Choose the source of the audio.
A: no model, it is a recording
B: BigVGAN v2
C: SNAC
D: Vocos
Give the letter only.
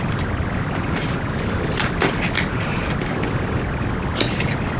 A